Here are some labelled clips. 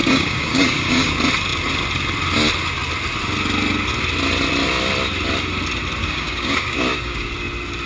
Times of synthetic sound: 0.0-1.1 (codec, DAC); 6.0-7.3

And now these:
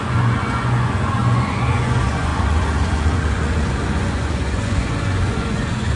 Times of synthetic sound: 0.0-6.0 (vocoder, Vocos)

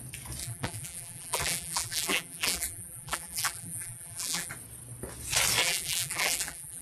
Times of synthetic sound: 0.4-4.5 (vocoder, BigVGAN v2); 5.6-6.8